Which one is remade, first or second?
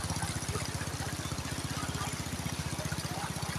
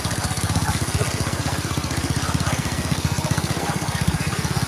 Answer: second